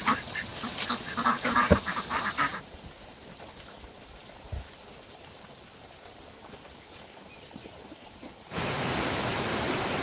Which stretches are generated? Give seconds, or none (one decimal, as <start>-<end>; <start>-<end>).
0.0-0.5; 1.3-6.1; 7.7-10.0